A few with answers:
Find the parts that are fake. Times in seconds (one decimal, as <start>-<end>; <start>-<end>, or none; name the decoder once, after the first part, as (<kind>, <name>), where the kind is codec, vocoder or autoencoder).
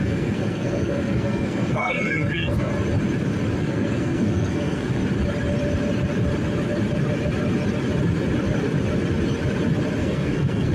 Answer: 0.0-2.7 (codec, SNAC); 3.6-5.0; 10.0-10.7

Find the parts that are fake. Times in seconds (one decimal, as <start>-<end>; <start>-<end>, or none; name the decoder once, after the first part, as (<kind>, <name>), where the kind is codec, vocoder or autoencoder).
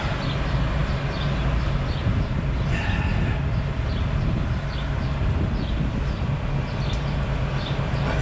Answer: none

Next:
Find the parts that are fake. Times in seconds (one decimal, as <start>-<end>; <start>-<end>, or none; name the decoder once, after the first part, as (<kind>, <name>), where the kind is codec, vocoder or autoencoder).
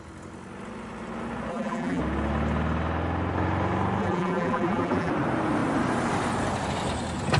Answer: 1.5-2.0 (vocoder, BigVGAN v2); 4.0-5.1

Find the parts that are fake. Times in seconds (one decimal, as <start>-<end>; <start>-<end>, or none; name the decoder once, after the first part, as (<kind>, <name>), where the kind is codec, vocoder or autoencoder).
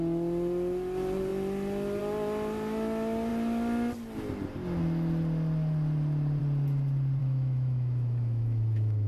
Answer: 7.2-9.1 (autoencoder, DAC-VAE)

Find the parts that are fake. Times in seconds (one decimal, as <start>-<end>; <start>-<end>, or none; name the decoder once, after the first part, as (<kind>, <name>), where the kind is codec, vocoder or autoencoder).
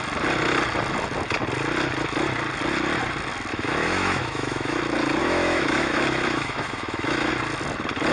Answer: 3.5-4.8 (autoencoder, DAC-VAE); 5.2-7.3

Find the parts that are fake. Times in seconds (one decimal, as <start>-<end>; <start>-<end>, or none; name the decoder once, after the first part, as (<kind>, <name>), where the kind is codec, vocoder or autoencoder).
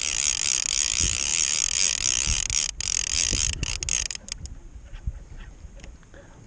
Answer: none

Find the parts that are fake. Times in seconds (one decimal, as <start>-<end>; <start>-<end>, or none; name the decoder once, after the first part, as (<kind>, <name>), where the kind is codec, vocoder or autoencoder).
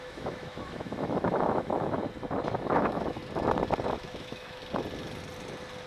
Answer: 0.0-2.0 (autoencoder, DAC-VAE); 2.6-3.2; 3.9-4.6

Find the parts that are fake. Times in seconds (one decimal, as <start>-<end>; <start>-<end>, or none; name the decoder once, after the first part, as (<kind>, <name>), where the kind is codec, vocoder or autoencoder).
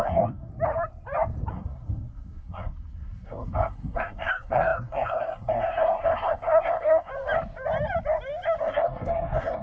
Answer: 0.0-0.5 (codec, SNAC); 1.5-7.1; 8.6-9.6